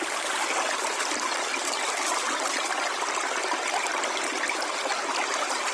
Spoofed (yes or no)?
no